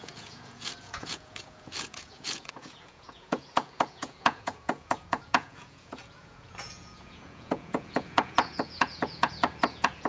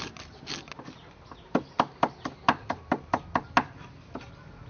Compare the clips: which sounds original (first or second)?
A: second